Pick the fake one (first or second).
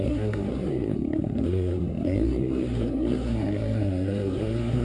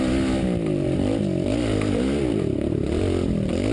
first